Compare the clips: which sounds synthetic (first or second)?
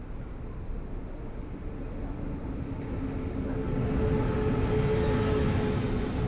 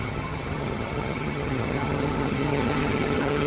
second